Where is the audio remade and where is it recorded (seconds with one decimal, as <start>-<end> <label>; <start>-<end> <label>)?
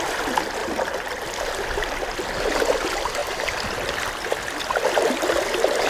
0.0-0.6 recorded; 0.6-2.0 remade; 2.0-5.9 recorded